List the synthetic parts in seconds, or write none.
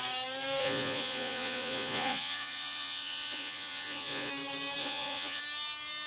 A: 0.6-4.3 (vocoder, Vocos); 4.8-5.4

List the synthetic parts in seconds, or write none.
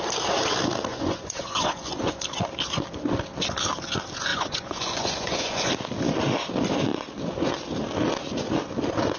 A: 0.9-2.2 (vocoder, Vocos); 4.3-5.7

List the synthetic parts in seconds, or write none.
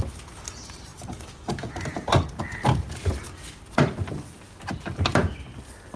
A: none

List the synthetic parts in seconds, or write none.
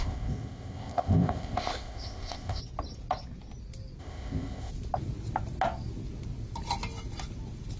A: 0.0-2.6 (codec, ZipCodec); 4.0-4.7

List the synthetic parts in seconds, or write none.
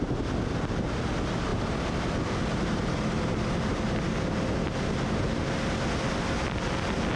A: none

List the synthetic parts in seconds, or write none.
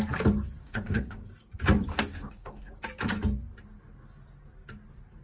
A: 0.6-1.2 (codec, DAC); 1.9-2.7